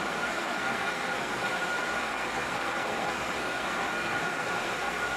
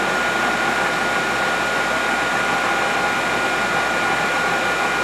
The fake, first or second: first